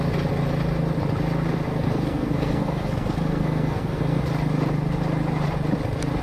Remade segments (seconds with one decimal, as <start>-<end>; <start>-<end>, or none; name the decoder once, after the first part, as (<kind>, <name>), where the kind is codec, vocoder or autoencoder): 1.7-4.2 (codec, SNAC)